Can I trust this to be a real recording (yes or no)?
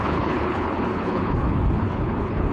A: no